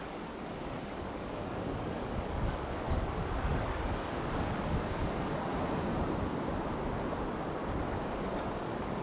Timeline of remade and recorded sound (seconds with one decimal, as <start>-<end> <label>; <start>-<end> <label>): 0.0-5.5 remade; 5.5-7.9 recorded; 7.9-9.0 remade